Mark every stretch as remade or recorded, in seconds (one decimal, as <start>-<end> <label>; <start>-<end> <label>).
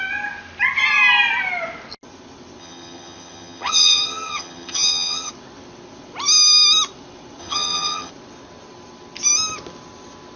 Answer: 0.0-2.6 recorded; 2.6-5.3 remade; 5.3-7.4 recorded; 7.4-8.1 remade; 8.1-10.4 recorded